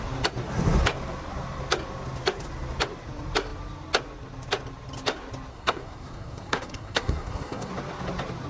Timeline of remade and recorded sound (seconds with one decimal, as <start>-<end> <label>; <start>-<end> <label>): 0.0-5.5 recorded; 5.5-7.7 remade; 7.7-8.5 recorded